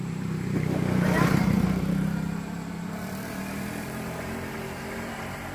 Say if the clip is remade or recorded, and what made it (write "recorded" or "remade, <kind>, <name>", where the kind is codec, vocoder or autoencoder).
remade, vocoder, BigVGAN v2